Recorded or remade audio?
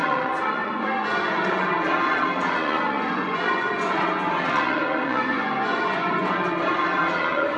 remade